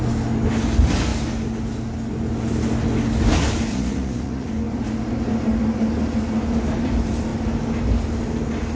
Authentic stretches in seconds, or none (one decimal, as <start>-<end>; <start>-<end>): 0.0-3.7; 4.5-8.8